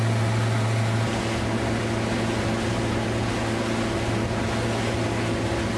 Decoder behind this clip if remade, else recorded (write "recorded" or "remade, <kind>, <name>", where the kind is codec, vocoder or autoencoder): recorded